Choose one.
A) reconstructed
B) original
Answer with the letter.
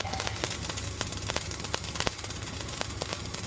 B